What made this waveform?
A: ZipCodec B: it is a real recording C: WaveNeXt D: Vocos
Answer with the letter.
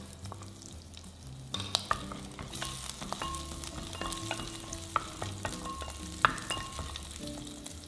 B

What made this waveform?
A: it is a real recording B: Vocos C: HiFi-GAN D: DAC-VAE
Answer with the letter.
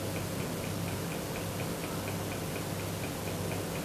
A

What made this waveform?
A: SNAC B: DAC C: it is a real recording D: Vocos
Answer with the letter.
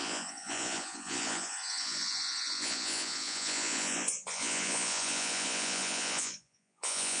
D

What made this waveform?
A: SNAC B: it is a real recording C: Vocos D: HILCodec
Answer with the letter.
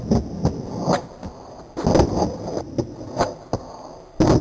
B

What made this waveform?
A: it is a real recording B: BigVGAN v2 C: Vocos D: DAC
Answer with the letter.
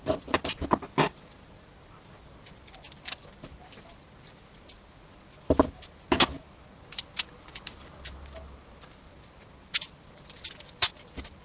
A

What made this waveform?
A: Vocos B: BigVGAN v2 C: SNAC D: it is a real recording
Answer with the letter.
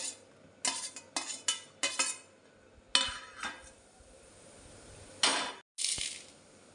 D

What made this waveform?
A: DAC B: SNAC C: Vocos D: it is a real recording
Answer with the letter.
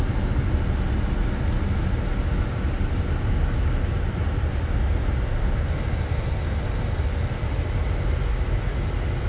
D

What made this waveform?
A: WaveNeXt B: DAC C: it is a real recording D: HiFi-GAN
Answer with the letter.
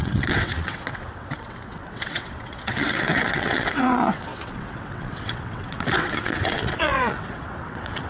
A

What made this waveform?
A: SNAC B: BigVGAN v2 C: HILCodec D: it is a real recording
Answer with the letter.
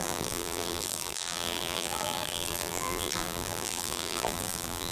B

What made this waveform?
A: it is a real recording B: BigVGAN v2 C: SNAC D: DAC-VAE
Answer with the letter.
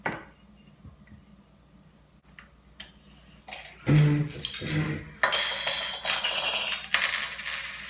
A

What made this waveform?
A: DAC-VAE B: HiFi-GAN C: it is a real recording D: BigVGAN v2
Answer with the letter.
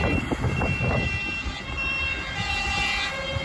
C